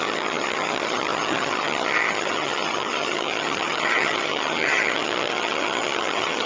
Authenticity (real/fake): fake